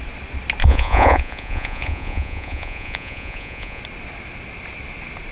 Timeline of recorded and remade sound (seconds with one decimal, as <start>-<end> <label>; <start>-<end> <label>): 0.0-0.6 recorded; 0.6-3.8 remade; 3.8-5.3 recorded